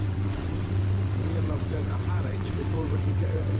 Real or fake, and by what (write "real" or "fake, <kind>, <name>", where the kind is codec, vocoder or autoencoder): fake, vocoder, WaveNeXt